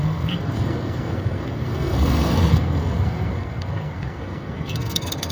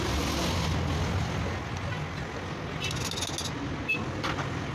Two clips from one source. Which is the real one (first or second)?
second